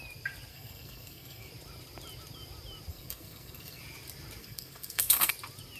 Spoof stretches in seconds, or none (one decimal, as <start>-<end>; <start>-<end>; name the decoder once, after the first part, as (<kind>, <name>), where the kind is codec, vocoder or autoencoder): 0.5-1.5 (codec, SNAC); 2.9-3.8; 4.4-5.3